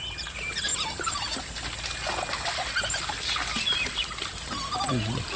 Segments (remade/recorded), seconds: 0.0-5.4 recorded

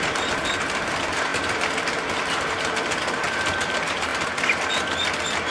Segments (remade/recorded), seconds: 0.0-4.1 remade; 4.1-5.5 recorded

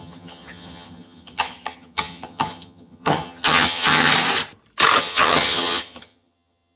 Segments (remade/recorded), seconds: 0.0-4.1 remade; 4.1-5.0 recorded; 5.0-6.8 remade